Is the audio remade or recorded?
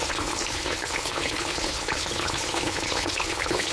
remade